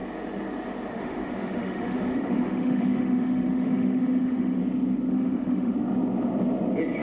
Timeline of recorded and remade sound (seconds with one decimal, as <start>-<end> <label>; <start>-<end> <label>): 0.0-0.9 recorded; 0.9-4.6 remade; 4.6-5.1 recorded; 5.1-5.7 remade; 5.7-7.0 recorded

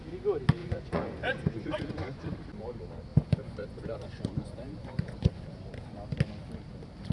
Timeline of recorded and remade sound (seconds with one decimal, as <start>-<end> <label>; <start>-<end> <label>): 0.0-0.6 recorded; 0.6-2.2 remade; 2.2-3.1 recorded; 3.1-5.4 remade; 5.4-7.1 recorded